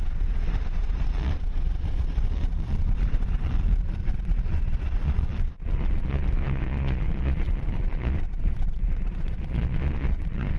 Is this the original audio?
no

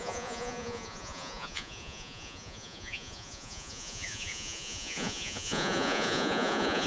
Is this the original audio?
no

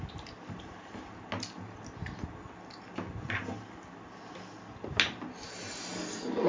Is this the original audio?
yes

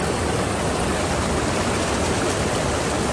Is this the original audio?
yes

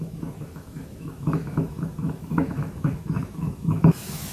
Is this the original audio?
no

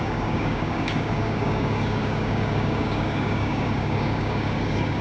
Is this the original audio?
no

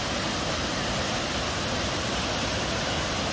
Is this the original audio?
yes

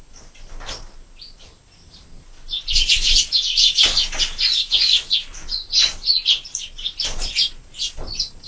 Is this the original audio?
yes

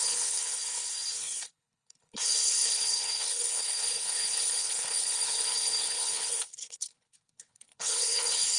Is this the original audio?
no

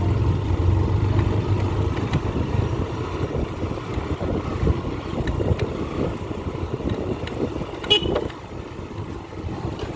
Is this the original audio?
no